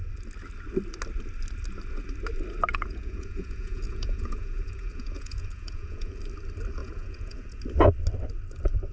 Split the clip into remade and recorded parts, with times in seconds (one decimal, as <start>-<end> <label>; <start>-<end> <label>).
0.0-2.7 recorded; 2.7-6.2 remade; 6.2-6.8 recorded; 6.8-7.6 remade; 7.6-8.9 recorded